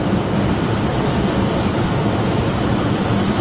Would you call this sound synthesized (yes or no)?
yes